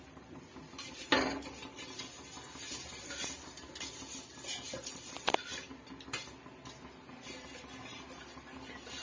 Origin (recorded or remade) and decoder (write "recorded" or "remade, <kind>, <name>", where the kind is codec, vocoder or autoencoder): recorded